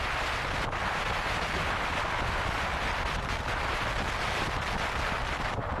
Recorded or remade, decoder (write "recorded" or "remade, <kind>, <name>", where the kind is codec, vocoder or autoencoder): recorded